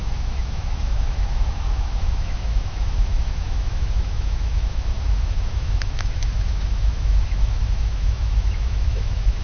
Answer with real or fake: fake